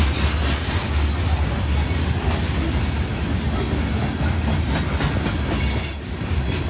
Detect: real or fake real